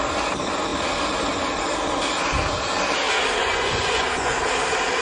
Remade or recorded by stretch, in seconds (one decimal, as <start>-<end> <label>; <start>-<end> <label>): 0.0-3.4 recorded; 3.4-4.4 remade; 4.4-5.0 recorded